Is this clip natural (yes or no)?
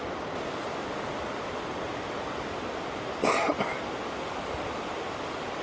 yes